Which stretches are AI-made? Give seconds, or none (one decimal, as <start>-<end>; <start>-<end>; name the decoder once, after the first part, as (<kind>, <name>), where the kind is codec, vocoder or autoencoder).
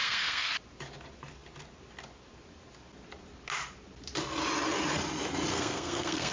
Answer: 0.0-0.5 (codec, SNAC); 5.5-6.3